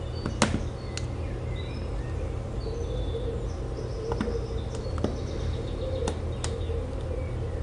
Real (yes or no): yes